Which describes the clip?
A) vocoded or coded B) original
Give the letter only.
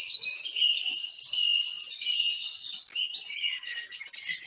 B